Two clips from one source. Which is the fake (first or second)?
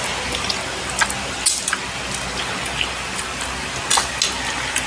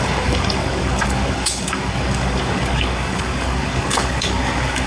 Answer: second